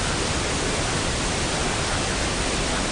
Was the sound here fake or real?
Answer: real